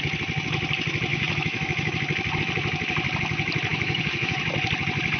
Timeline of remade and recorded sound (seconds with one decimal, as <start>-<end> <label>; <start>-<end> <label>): 0.0-1.1 recorded; 1.1-1.9 remade; 1.9-3.7 recorded; 3.7-4.4 remade; 4.4-5.2 recorded